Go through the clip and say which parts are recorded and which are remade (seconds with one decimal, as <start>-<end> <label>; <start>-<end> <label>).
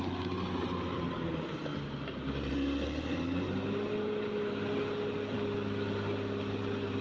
0.0-7.0 recorded